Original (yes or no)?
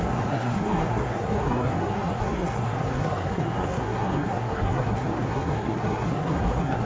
no